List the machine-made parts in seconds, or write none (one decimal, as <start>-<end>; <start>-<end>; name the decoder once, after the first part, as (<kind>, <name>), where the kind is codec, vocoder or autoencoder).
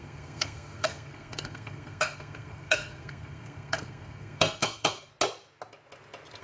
0.0-5.1 (codec, SNAC)